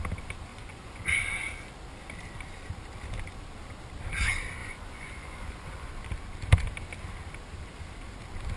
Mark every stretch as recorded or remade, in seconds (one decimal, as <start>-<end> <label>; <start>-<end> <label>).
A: 0.0-0.5 recorded; 0.5-1.7 remade; 1.7-4.6 recorded; 4.6-5.9 remade; 5.9-8.6 recorded